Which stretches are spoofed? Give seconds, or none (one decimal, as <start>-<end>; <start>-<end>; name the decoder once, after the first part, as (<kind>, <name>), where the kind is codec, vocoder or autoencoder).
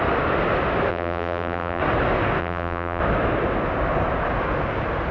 0.9-1.8 (vocoder, BigVGAN v2); 2.4-3.0